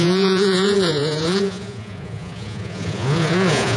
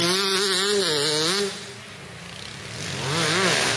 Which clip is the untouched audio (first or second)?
second